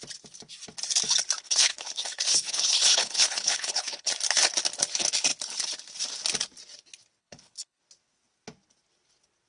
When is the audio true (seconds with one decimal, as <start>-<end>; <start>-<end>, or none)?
0.0-1.4; 4.1-7.2; 7.8-9.5